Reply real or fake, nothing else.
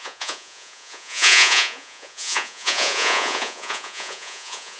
fake